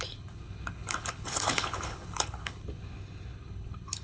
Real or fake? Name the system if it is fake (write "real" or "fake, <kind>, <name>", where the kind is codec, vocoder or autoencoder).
fake, codec, HILCodec